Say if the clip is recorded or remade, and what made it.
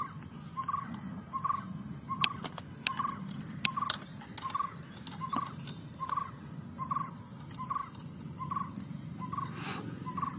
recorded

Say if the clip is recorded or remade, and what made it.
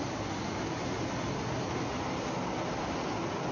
recorded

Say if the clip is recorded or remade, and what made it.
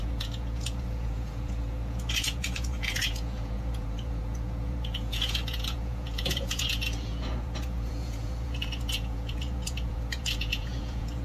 remade, vocoder, Vocos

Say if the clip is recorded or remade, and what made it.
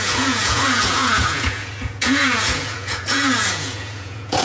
remade, vocoder, Vocos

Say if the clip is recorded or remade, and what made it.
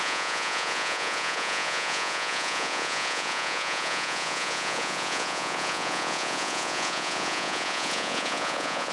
remade, vocoder, Vocos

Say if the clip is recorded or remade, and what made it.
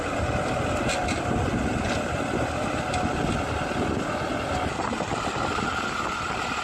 recorded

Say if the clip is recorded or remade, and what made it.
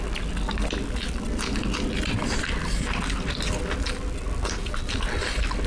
recorded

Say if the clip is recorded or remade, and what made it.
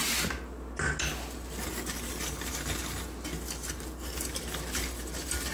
recorded